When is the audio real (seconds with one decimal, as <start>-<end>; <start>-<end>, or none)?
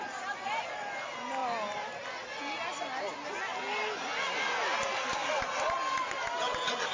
0.0-6.9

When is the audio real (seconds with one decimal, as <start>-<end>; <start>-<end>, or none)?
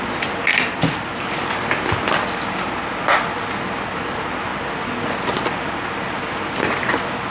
0.0-7.3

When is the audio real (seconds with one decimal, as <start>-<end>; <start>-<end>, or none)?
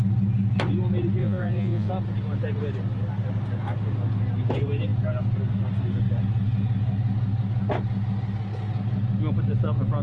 0.0-1.2; 1.9-10.0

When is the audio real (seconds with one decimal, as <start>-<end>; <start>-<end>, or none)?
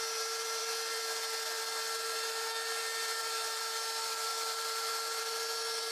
0.0-5.9